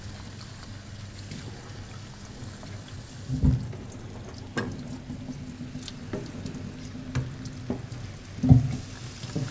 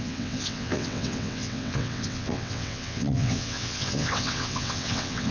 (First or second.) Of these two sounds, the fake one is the second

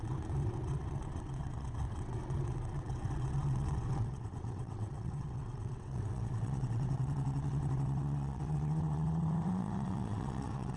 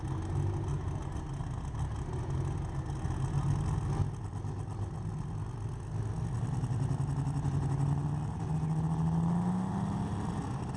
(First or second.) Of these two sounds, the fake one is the first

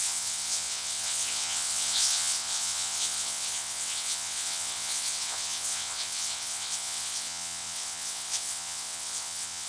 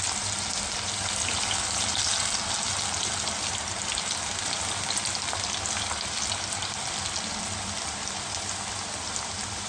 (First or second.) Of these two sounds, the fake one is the first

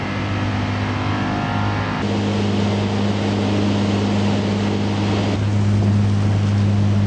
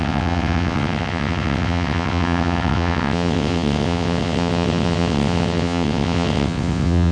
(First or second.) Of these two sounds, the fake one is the second